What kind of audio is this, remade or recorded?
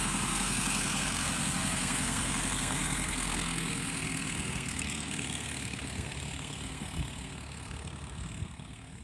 remade